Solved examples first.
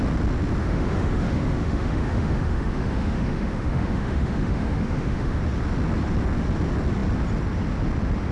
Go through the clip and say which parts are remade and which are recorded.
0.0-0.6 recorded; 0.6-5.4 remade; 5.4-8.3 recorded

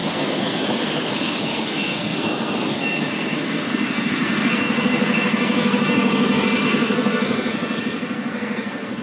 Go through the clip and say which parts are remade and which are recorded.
0.0-9.0 remade

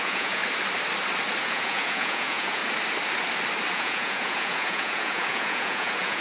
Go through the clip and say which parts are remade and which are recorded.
0.0-0.4 remade; 0.4-1.4 recorded; 1.4-2.6 remade; 2.6-3.7 recorded; 3.7-6.2 remade